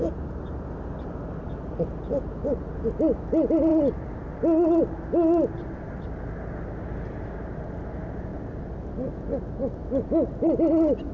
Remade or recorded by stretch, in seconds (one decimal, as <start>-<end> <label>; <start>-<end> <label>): 0.0-11.1 recorded